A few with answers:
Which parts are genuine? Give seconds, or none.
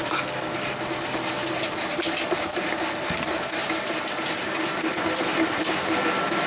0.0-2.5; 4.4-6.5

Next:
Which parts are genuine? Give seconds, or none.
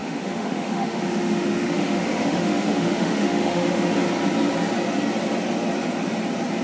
3.9-6.6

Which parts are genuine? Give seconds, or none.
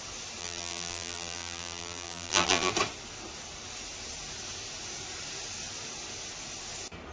0.0-0.4; 2.7-7.1